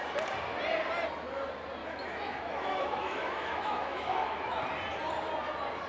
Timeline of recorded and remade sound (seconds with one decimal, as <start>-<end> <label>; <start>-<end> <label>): 0.0-1.8 recorded; 1.8-4.6 remade; 4.6-5.9 recorded